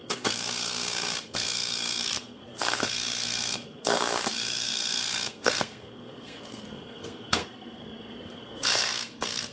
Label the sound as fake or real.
fake